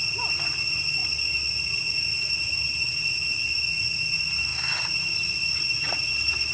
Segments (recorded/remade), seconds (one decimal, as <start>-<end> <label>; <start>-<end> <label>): 0.0-6.5 recorded

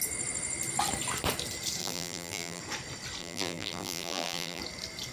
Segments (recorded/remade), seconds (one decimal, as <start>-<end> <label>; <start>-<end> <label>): 0.0-1.8 recorded; 1.8-2.6 remade; 2.6-3.2 recorded; 3.2-4.6 remade; 4.6-5.1 recorded

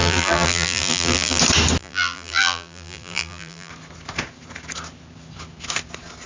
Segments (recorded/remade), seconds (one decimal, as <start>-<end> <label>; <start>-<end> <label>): 0.0-1.4 remade; 1.4-1.8 recorded; 1.8-3.7 remade; 3.7-6.3 recorded

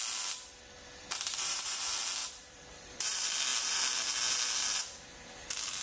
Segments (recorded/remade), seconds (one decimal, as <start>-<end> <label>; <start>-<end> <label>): 0.0-1.0 recorded; 1.0-1.8 remade; 1.8-2.2 recorded; 2.2-2.9 remade; 2.9-5.8 recorded

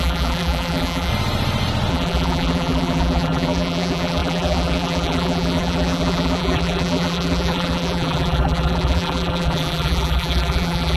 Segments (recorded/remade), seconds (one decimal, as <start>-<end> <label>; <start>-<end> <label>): 0.0-1.1 remade; 1.1-1.9 recorded; 1.9-11.0 remade